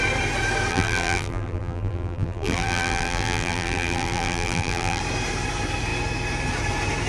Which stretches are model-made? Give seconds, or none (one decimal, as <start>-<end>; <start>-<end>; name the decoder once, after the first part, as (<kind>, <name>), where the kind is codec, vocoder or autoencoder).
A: 0.7-5.0 (vocoder, BigVGAN v2)